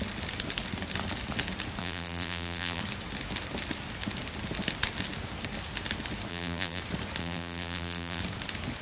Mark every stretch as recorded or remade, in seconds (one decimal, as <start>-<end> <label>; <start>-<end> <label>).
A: 0.0-1.8 recorded; 1.8-2.8 remade; 2.8-6.3 recorded; 6.3-6.8 remade; 6.8-7.2 recorded; 7.2-8.2 remade; 8.2-8.8 recorded